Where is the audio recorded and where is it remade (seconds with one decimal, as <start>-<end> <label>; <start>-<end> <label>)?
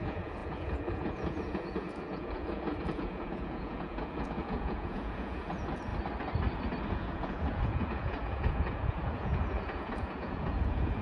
0.0-5.9 remade; 5.9-6.9 recorded; 6.9-11.0 remade